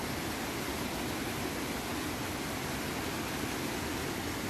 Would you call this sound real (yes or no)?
yes